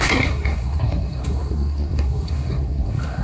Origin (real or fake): fake